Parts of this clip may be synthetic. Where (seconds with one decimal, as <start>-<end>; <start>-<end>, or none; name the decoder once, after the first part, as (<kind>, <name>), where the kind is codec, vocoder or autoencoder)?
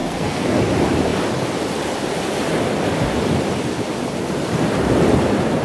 0.0-0.6 (codec, SNAC)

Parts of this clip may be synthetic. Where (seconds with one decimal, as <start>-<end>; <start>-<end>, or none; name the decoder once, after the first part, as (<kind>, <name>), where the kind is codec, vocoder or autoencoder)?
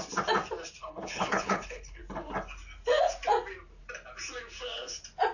0.8-2.0 (codec, HILCodec)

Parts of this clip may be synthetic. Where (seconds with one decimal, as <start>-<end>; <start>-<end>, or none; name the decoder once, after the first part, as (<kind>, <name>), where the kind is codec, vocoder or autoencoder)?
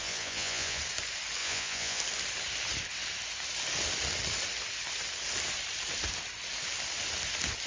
0.0-0.8 (vocoder, Vocos); 1.4-2.0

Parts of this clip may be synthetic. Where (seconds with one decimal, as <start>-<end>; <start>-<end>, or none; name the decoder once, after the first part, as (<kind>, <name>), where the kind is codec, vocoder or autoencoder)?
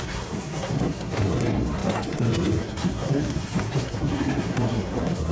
0.0-5.3 (codec, SNAC)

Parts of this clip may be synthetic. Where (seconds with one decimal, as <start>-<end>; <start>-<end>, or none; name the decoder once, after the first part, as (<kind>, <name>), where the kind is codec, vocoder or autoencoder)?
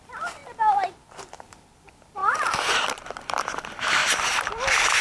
0.0-0.4 (vocoder, BigVGAN v2); 1.3-4.0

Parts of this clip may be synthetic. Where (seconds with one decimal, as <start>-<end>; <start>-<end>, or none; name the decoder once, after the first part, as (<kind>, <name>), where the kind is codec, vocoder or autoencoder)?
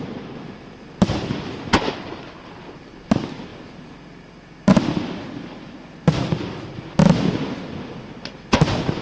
none